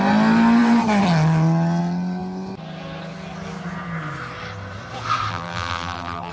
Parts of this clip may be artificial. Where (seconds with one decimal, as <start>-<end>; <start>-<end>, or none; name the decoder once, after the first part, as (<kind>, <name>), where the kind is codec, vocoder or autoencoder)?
5.3-6.3 (vocoder, BigVGAN v2)